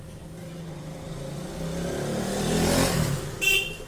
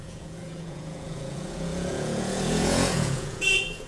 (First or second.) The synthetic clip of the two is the second